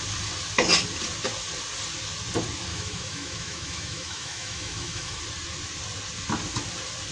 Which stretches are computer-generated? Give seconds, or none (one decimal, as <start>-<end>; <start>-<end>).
2.7-5.2